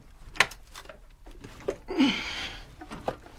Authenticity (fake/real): real